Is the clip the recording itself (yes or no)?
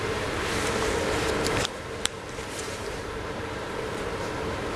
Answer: no